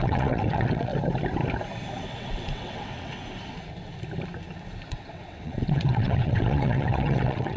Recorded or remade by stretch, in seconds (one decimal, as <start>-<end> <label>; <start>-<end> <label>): 0.0-0.9 remade; 0.9-2.1 recorded; 2.1-3.2 remade; 3.2-4.9 recorded; 4.9-7.6 remade